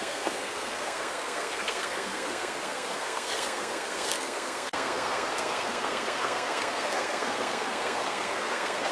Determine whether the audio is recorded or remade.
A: remade